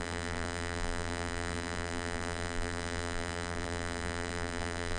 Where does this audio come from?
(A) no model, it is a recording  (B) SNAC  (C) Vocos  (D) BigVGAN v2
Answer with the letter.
D